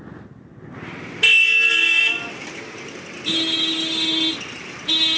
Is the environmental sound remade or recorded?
recorded